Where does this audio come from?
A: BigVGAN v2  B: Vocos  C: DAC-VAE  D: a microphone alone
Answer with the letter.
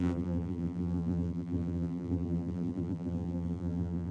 A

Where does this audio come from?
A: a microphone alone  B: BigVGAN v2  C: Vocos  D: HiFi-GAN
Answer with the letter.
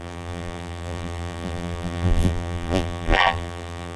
B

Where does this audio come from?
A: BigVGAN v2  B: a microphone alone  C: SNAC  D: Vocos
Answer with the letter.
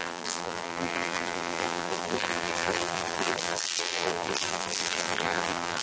A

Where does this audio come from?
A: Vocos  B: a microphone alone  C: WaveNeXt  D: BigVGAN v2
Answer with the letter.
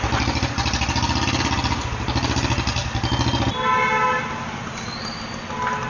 B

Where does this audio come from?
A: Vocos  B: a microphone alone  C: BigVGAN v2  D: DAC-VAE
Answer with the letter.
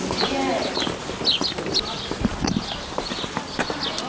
B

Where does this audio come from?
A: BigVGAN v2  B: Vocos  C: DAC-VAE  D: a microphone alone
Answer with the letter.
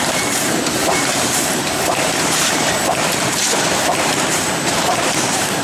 A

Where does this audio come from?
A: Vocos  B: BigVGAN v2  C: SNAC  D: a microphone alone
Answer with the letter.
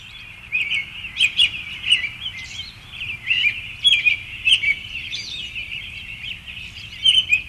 B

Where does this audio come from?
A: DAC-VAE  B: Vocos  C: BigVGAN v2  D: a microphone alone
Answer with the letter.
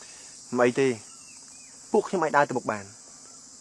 D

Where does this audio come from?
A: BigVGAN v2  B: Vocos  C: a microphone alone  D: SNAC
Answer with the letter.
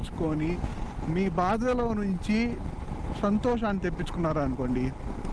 C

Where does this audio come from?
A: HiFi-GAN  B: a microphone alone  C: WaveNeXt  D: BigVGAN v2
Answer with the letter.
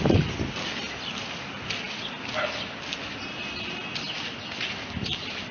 B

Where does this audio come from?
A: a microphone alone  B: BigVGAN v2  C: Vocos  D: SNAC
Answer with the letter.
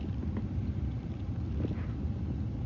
B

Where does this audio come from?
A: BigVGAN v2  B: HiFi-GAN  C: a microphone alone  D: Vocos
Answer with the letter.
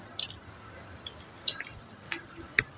C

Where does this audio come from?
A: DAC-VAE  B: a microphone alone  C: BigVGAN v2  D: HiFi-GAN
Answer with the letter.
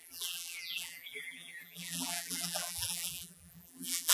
C